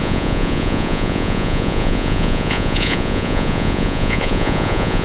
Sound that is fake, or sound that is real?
fake